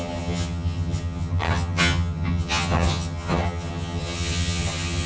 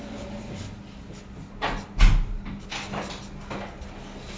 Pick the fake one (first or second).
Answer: first